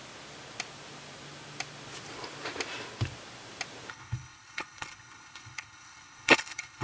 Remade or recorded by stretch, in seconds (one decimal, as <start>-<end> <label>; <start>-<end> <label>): 0.0-3.9 recorded; 3.9-6.8 remade